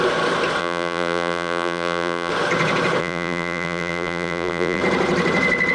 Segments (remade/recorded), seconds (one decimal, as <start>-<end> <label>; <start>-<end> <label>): 0.0-0.6 recorded; 0.6-2.3 remade; 2.3-3.0 recorded; 3.0-4.8 remade; 4.8-5.7 recorded